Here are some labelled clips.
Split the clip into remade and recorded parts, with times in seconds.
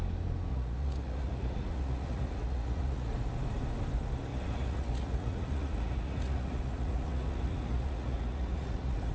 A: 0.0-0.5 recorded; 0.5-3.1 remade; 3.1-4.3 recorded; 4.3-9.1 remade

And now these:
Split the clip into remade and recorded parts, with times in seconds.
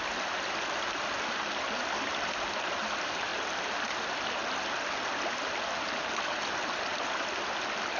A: 0.0-8.0 recorded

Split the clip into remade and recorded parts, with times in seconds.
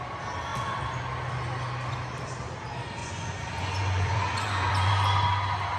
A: 0.0-3.0 recorded; 3.0-4.9 remade; 4.9-5.8 recorded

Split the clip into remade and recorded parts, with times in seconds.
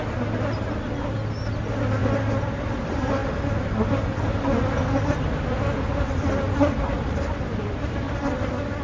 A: 0.0-8.8 recorded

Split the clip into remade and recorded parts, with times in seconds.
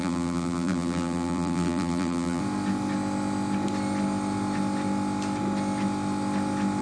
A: 0.0-2.4 remade; 2.4-6.8 recorded